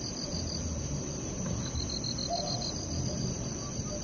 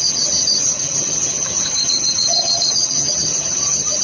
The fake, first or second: second